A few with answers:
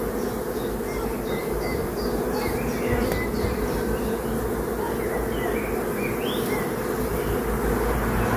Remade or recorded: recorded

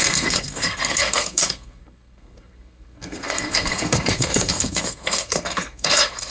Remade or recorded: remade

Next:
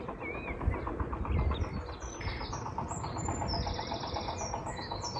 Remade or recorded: recorded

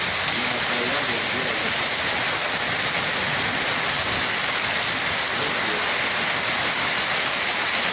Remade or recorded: recorded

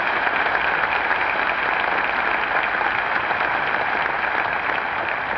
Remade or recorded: recorded